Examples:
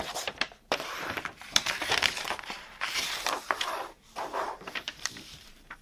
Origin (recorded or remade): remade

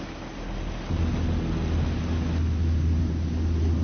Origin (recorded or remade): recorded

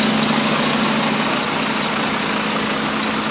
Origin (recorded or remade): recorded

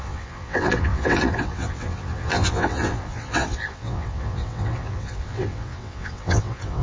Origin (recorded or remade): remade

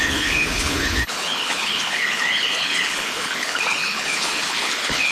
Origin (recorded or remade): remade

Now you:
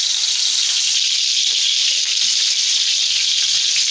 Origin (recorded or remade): recorded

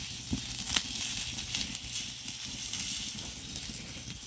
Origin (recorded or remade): recorded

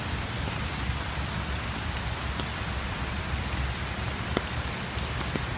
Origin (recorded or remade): remade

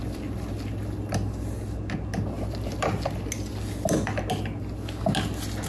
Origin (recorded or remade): recorded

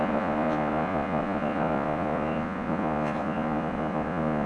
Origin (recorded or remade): remade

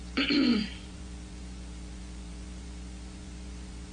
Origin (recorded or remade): remade